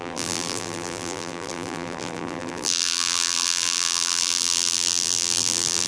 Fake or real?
fake